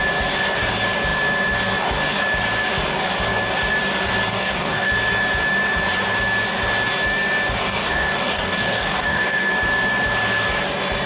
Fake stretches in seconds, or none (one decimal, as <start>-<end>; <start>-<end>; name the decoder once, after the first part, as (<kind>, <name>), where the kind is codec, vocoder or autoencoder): 4.3-4.9 (codec, DAC); 7.6-9.5